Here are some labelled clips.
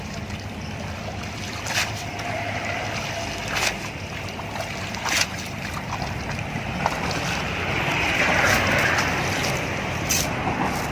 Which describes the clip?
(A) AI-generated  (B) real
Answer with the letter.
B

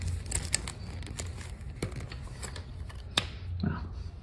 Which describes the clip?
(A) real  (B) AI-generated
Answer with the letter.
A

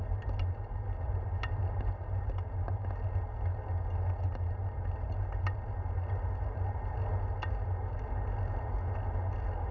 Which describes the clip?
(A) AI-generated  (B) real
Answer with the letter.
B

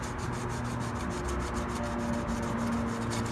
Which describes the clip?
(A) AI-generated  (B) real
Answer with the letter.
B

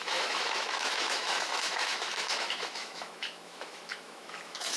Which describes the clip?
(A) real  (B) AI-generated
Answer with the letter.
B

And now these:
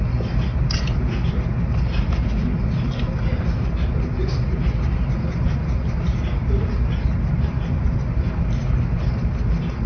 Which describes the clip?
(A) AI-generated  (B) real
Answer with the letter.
B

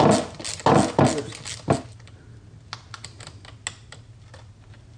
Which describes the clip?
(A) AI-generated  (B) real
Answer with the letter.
B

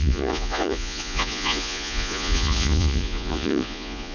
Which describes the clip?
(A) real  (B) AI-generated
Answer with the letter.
B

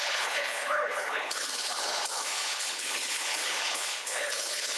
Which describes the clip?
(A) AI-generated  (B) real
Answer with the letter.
A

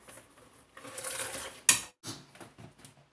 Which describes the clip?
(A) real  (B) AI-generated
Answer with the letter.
A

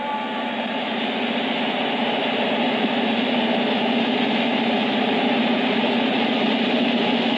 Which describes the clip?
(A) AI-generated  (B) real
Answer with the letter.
A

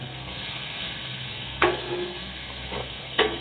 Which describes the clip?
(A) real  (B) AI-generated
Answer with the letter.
B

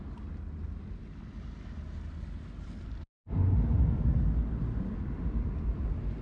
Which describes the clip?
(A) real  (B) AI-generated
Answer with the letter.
A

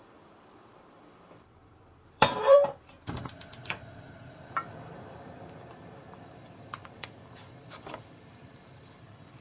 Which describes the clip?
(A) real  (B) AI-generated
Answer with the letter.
B